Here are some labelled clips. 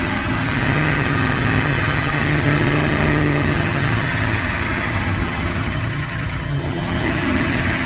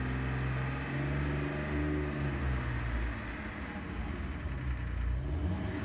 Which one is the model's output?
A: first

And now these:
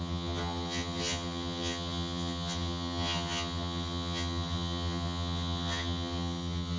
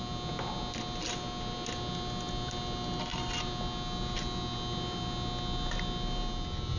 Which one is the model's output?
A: first